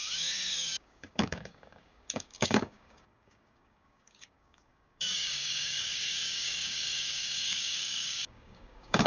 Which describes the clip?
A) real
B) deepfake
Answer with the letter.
B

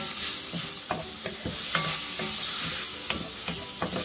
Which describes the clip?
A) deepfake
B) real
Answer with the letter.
B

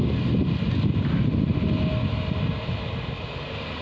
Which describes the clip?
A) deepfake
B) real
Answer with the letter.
B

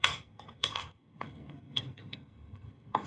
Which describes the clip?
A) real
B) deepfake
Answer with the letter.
B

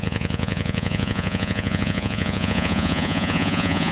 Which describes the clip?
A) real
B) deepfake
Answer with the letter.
B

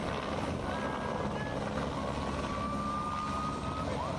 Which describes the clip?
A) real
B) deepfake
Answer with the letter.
A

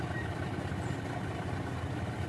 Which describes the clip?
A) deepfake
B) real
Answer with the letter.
B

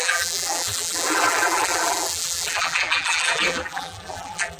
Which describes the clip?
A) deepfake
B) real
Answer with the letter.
A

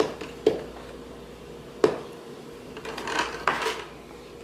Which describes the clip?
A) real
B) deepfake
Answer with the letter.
A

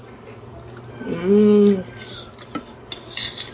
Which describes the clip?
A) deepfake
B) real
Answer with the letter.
B